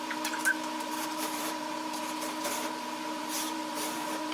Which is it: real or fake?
fake